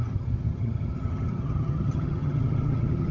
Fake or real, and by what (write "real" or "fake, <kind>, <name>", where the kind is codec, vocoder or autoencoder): fake, vocoder, HiFi-GAN